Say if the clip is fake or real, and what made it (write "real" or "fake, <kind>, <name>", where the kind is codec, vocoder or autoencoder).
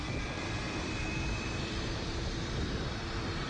fake, vocoder, BigVGAN v2